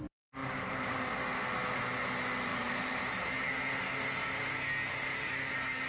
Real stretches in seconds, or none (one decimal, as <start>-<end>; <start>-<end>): 0.0-0.4; 1.1-2.5; 3.3-5.9